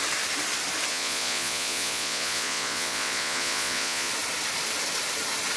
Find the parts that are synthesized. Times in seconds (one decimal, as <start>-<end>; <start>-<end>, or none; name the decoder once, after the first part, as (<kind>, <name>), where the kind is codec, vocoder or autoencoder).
0.9-4.1 (vocoder, Vocos)

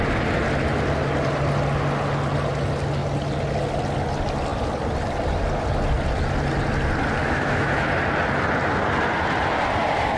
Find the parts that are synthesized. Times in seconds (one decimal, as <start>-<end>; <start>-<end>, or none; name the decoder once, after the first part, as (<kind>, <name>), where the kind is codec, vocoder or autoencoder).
7.2-7.9 (autoencoder, DAC-VAE)

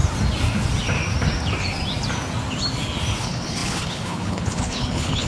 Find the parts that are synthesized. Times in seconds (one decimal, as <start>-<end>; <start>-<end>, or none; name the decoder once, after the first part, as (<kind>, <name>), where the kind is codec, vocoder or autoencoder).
3.2-5.3 (codec, HILCodec)

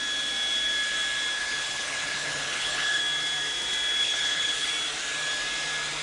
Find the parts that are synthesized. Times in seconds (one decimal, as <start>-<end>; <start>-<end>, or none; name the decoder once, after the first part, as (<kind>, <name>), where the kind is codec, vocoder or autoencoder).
1.4-3.0 (codec, HILCodec); 4.0-4.7

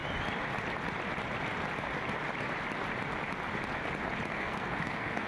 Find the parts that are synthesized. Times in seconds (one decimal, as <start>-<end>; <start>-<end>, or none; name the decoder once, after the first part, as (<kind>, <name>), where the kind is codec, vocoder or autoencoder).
4.3-5.3 (codec, SNAC)

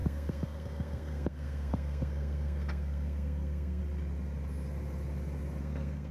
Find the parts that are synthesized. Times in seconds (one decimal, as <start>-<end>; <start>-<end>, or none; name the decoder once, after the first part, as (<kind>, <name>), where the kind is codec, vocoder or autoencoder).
0.0-3.8 (codec, SNAC); 5.6-6.1